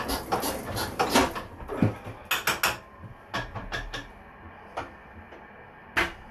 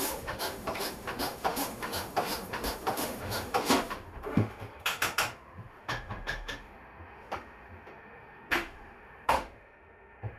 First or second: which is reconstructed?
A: second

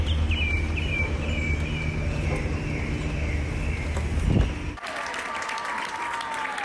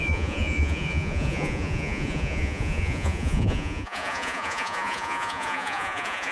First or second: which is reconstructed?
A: second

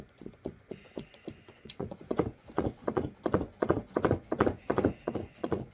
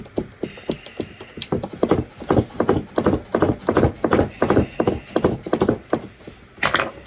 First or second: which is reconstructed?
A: first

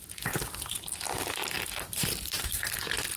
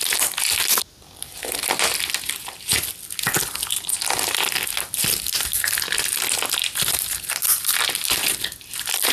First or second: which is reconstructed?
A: first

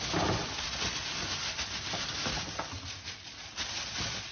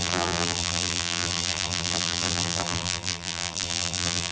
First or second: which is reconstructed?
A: second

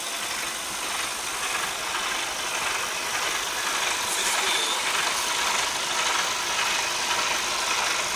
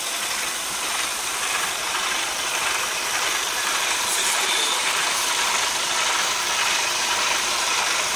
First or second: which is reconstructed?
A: second